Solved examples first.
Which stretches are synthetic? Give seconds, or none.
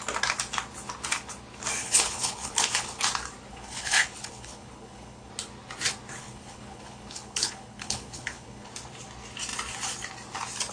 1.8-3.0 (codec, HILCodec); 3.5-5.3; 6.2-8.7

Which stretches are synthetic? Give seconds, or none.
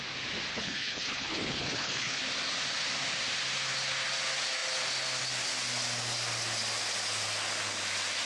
0.5-2.2 (codec, HILCodec)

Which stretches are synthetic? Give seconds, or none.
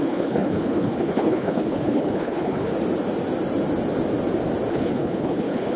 0.0-2.7 (codec, HILCodec); 4.7-5.8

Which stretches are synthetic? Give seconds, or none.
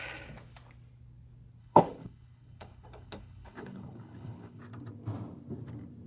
1.6-4.6 (codec, HILCodec)